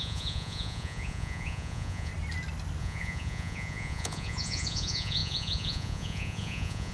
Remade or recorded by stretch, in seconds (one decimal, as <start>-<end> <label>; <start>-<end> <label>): 0.0-2.1 remade; 2.1-2.8 recorded; 2.8-6.9 remade